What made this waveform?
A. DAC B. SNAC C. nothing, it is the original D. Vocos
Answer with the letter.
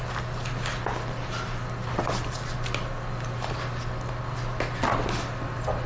C